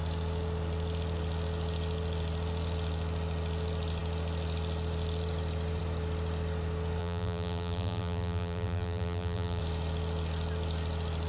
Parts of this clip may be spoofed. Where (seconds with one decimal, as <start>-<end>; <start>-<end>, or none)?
7.0-9.6